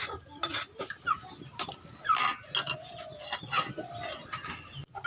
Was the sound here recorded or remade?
recorded